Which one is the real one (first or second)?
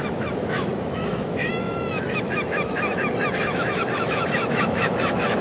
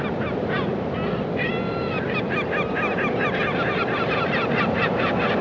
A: second